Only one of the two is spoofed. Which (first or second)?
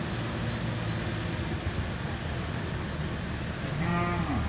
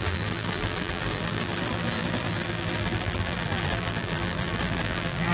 second